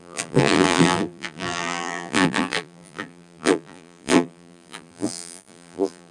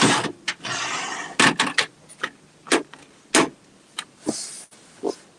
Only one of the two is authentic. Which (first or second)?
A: second